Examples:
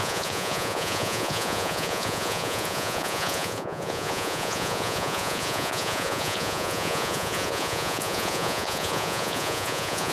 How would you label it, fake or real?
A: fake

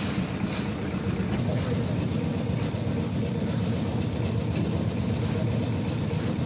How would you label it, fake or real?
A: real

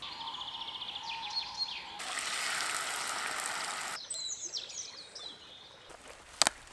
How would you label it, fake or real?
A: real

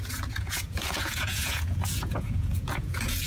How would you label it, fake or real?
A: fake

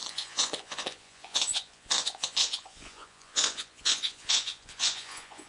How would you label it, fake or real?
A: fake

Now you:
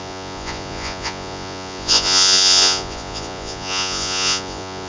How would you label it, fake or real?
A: fake